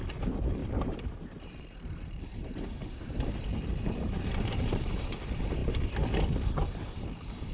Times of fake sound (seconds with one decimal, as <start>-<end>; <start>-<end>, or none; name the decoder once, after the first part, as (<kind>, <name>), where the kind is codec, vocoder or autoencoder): 0.6-4.9 (vocoder, BigVGAN v2)